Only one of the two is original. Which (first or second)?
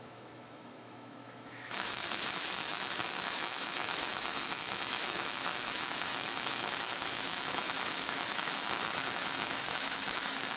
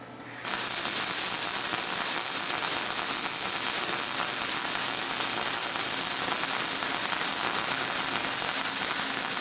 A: second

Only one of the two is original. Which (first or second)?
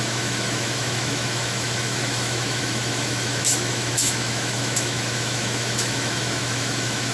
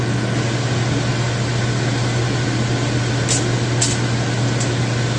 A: second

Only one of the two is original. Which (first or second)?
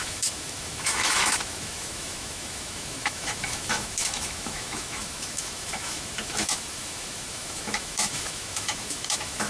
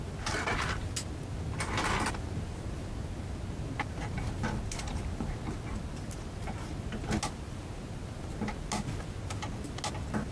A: second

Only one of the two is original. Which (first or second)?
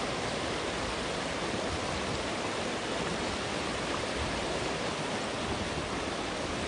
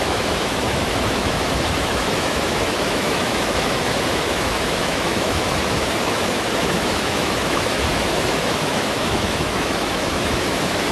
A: first